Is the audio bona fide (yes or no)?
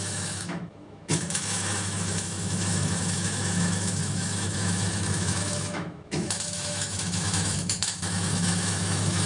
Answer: no